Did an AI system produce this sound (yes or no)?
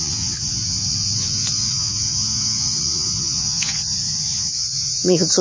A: yes